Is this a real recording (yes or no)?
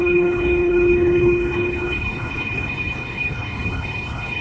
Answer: no